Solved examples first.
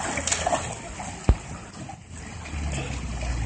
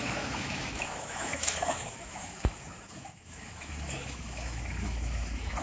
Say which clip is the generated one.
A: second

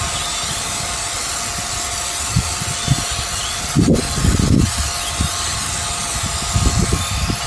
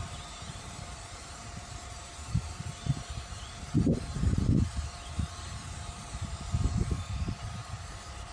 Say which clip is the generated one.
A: second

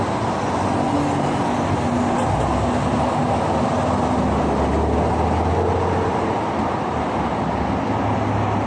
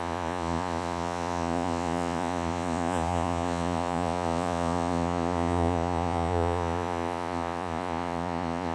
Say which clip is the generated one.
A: second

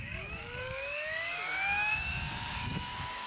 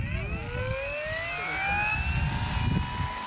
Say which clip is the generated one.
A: first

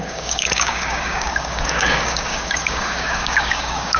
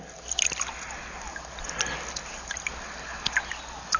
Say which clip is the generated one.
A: first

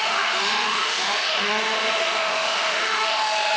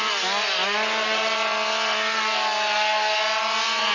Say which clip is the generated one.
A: first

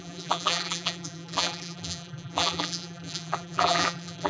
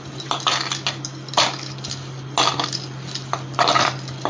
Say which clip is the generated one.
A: first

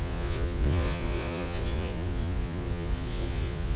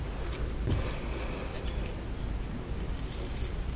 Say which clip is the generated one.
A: first